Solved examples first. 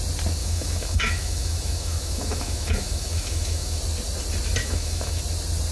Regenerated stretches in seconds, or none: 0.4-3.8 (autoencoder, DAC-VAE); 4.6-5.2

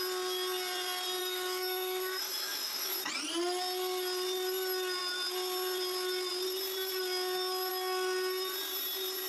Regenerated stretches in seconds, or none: 1.2-3.1 (autoencoder, DAC-VAE)

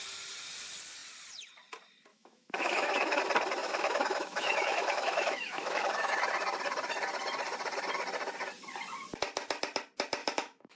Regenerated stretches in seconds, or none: 2.1-3.2 (autoencoder, DAC-VAE); 3.6-6.1; 10.2-10.8

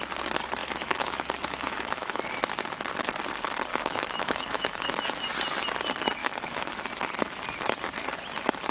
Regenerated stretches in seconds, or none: 0.6-2.2 (autoencoder, DAC-VAE); 3.7-4.9; 6.2-6.7

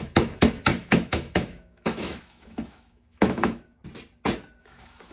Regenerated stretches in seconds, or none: 0.0-3.8 (autoencoder, DAC-VAE); 4.6-5.1

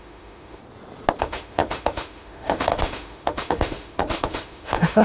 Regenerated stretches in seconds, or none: 0.0-0.6 (autoencoder, DAC-VAE); 1.2-5.0

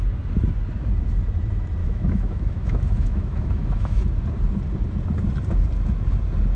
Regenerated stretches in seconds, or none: 1.8-4.0 (autoencoder, DAC-VAE)